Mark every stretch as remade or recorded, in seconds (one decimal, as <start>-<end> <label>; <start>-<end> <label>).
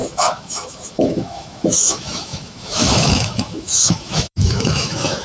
0.0-5.2 remade